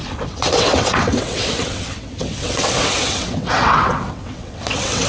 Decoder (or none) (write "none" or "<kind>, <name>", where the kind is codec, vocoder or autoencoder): vocoder, WaveNeXt